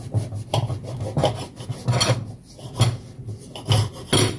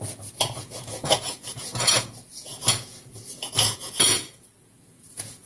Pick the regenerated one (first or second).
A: second